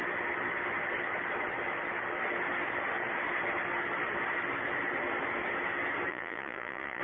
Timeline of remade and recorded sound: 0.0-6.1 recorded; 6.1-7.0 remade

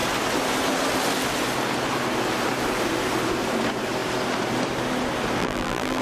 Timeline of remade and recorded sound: 0.0-5.4 recorded; 5.4-6.0 remade